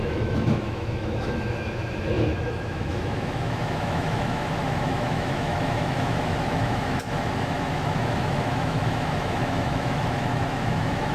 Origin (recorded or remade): remade